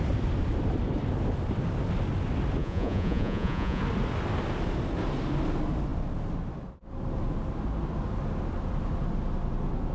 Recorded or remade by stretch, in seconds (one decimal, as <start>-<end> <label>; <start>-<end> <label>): 0.0-2.6 recorded; 2.6-3.8 remade; 3.8-9.9 recorded